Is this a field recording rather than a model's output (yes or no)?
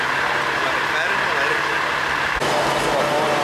yes